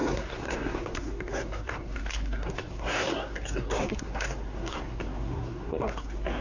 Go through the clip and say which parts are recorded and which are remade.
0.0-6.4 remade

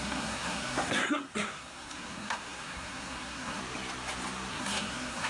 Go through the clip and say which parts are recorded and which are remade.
0.0-3.6 remade; 3.6-4.5 recorded; 4.5-5.3 remade

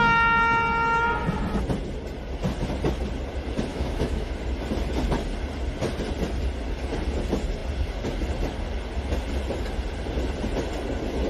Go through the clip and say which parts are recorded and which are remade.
0.0-3.7 recorded; 3.7-4.3 remade; 4.3-11.3 recorded

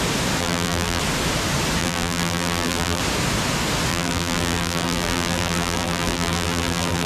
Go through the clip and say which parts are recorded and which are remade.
0.0-0.4 recorded; 0.4-1.0 remade; 1.0-1.8 recorded; 1.8-3.0 remade; 3.0-3.9 recorded; 3.9-7.1 remade

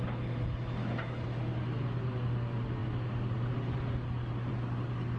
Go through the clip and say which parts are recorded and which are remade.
0.0-5.2 recorded

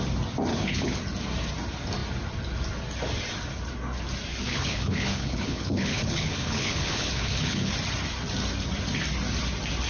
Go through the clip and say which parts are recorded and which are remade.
0.0-0.5 recorded; 0.5-1.0 remade; 1.0-4.3 recorded; 4.3-7.7 remade; 7.7-9.9 recorded

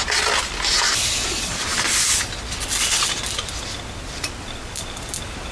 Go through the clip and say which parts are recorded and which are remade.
0.0-5.5 recorded

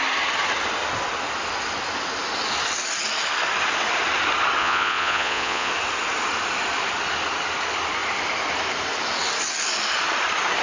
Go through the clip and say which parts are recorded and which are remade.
0.0-4.6 recorded; 4.6-5.7 remade; 5.7-10.6 recorded